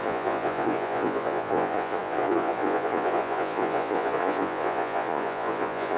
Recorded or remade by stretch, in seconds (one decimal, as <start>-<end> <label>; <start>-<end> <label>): 0.0-6.0 remade